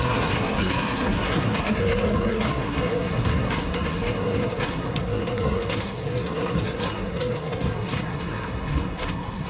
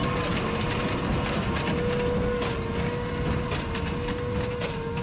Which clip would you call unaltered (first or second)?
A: second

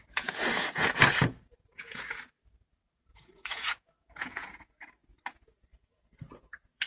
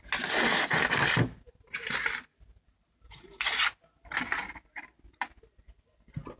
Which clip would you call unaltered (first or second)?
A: second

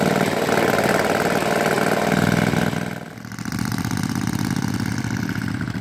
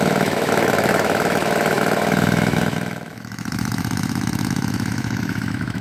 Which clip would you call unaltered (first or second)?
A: first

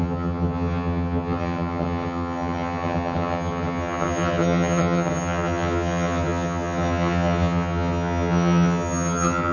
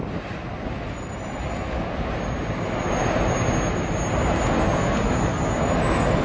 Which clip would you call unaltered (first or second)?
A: second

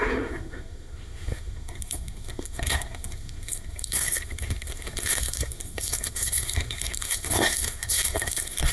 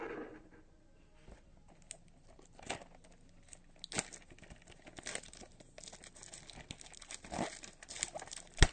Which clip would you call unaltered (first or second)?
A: second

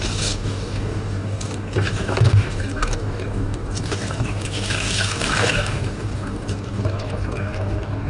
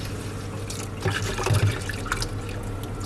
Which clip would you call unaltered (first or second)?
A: second